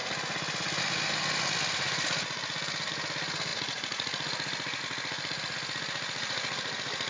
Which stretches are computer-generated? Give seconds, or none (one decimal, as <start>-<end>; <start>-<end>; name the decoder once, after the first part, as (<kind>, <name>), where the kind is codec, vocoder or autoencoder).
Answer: none